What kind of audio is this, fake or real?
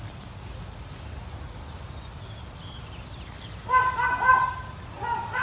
real